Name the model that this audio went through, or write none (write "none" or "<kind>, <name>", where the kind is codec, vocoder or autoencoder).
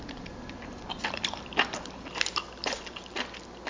none